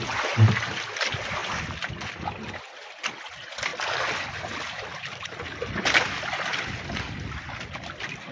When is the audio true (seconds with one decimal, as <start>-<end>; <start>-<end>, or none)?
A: 0.0-8.3